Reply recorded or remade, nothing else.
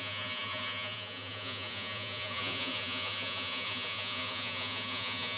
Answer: remade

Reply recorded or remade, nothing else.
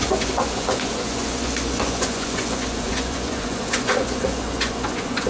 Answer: remade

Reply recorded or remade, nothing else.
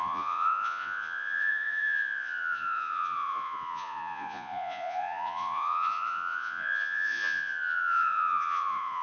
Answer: remade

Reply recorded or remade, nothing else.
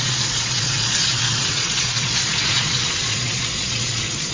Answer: remade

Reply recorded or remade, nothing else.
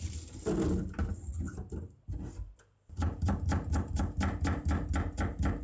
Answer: recorded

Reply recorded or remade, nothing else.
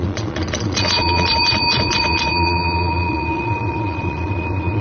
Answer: remade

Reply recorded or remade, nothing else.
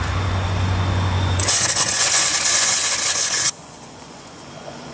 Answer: remade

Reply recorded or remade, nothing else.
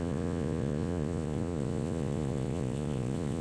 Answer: remade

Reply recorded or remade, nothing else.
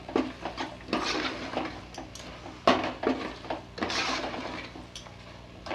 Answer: recorded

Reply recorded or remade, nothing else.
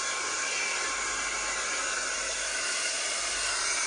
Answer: recorded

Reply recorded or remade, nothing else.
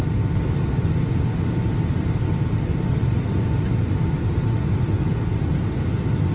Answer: recorded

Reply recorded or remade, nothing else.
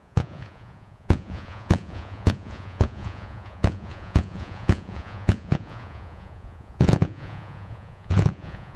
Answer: remade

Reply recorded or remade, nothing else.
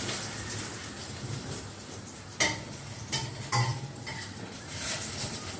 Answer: recorded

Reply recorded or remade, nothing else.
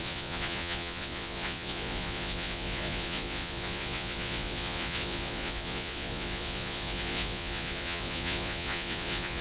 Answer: remade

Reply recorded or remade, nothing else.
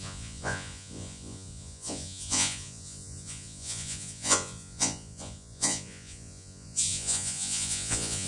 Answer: remade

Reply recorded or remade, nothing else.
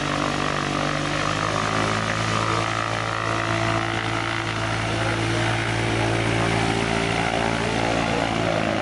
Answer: recorded